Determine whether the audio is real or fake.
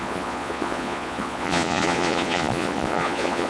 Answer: fake